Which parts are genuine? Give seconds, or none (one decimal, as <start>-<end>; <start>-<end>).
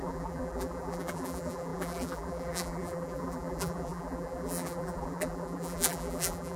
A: none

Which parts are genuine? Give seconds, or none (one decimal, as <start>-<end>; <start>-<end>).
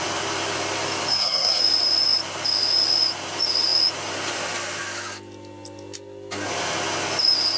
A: 0.0-1.1; 1.6-7.6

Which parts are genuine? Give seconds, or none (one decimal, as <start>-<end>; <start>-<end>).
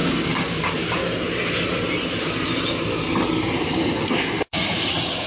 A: 1.0-4.2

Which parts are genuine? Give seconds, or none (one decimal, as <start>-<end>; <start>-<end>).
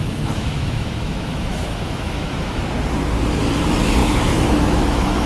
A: 2.7-4.0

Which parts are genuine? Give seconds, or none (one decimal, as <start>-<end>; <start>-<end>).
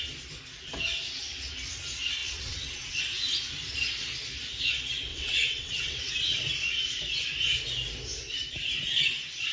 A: 0.0-2.2; 3.0-5.1; 6.1-9.5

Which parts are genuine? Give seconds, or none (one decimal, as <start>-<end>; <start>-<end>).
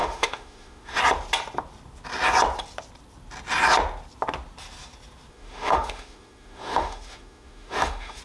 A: 1.0-5.3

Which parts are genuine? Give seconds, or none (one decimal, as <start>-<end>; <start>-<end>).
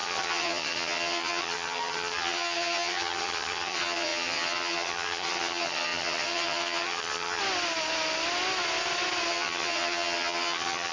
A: 7.4-9.3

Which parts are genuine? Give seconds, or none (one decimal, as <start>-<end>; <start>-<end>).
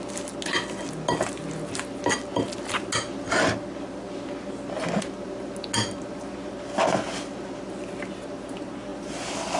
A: 0.0-9.6